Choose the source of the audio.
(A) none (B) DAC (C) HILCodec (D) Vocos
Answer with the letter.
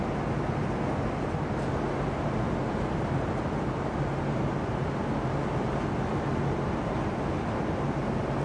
A